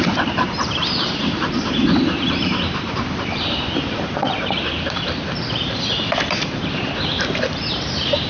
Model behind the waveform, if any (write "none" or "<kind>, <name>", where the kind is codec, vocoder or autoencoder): vocoder, BigVGAN v2